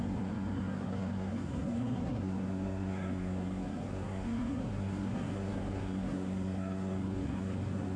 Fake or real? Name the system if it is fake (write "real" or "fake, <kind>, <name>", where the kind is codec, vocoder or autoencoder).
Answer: fake, codec, SNAC